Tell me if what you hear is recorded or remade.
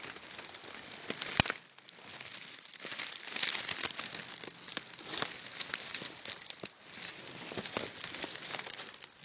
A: recorded